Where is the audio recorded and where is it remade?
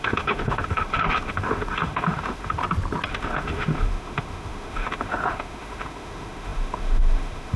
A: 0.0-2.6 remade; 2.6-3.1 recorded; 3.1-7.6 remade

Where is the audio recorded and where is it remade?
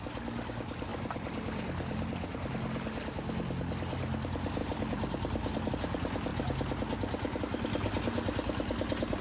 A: 0.0-0.9 recorded; 0.9-2.5 remade; 2.5-4.6 recorded; 4.6-5.7 remade; 5.7-9.2 recorded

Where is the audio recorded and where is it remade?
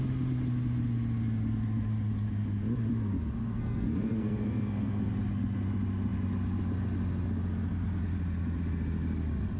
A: 0.0-3.4 recorded; 3.4-5.1 remade; 5.1-9.6 recorded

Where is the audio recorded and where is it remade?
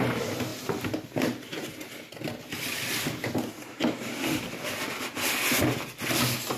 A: 0.0-6.6 recorded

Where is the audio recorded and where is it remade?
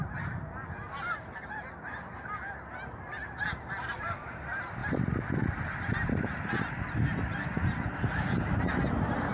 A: 0.0-4.8 recorded; 4.8-6.5 remade; 6.5-9.3 recorded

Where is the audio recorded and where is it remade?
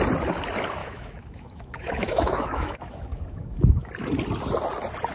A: 0.0-0.8 recorded; 0.8-3.9 remade; 3.9-5.1 recorded